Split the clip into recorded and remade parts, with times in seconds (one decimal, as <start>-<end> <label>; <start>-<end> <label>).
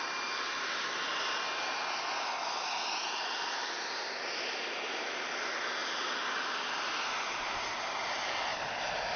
0.0-5.8 recorded; 5.8-7.5 remade; 7.5-9.2 recorded